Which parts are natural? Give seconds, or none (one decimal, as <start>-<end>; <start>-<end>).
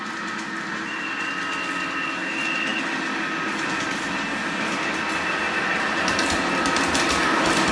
0.0-7.7